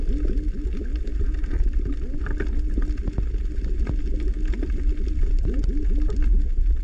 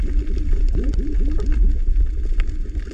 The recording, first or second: first